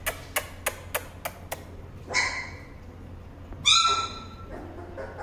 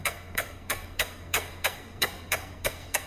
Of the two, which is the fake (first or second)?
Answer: second